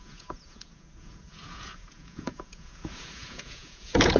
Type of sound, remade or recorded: remade